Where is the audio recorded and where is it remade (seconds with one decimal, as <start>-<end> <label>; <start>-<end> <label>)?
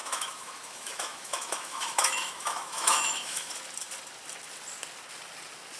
0.0-3.5 remade; 3.5-5.8 recorded